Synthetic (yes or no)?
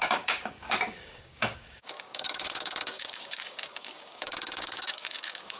yes